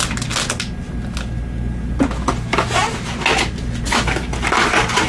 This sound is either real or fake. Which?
real